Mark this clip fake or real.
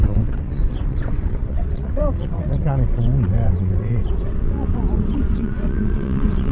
fake